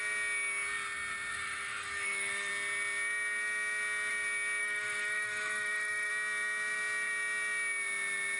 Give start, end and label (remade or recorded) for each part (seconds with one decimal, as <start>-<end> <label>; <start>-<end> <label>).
0.0-1.3 recorded; 1.3-2.5 remade; 2.5-4.6 recorded; 4.6-6.1 remade; 6.1-8.4 recorded